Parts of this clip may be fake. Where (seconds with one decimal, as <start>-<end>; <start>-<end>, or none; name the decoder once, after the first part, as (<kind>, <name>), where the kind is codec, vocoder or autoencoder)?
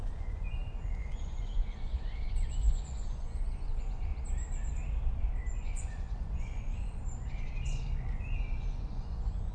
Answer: 0.0-4.1 (vocoder, Vocos); 5.5-7.0; 7.6-9.5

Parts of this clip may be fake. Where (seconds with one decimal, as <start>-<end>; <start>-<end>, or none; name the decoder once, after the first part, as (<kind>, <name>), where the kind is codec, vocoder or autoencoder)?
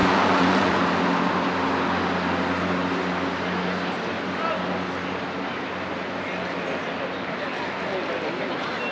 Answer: 0.0-0.7 (vocoder, Vocos)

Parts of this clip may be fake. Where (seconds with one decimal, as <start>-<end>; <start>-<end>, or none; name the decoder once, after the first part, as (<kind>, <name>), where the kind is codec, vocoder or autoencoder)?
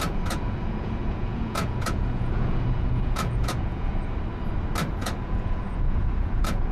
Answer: 0.0-3.9 (vocoder, Vocos); 4.9-6.7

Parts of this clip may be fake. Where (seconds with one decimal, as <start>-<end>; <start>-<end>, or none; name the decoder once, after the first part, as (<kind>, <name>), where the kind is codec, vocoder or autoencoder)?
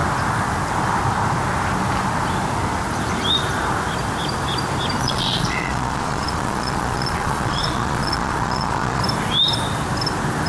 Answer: 5.0-9.0 (vocoder, Vocos)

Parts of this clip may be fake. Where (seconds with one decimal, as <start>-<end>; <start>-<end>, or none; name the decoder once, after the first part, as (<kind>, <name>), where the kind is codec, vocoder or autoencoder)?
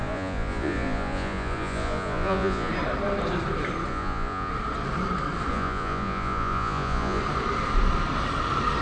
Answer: 0.0-2.7 (vocoder, Vocos); 3.9-4.5; 5.5-7.2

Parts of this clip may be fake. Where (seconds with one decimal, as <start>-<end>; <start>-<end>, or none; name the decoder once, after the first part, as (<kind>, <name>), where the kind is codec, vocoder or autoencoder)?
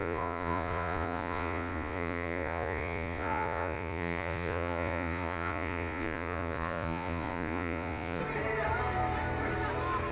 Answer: 0.0-8.2 (vocoder, Vocos)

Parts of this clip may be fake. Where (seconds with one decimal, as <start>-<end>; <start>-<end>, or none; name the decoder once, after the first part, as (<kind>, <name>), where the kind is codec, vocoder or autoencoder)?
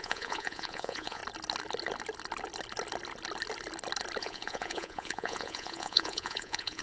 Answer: 0.0-1.2 (vocoder, Vocos); 4.2-6.8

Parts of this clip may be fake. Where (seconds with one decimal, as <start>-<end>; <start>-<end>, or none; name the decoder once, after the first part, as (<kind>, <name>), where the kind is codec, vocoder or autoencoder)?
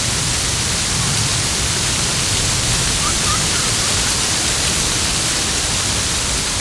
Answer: none